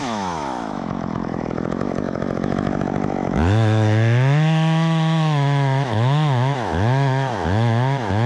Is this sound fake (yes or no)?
yes